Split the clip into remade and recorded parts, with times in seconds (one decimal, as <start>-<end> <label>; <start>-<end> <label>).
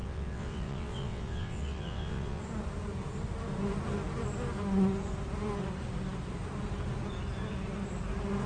0.0-2.4 remade; 2.4-8.5 recorded